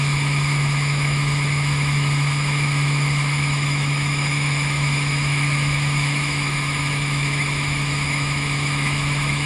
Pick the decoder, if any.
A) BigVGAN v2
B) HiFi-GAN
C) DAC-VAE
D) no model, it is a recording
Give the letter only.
C